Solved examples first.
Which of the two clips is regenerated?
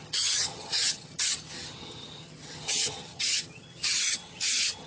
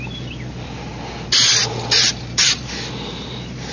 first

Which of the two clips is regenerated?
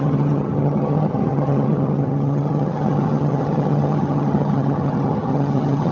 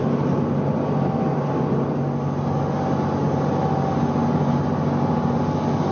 first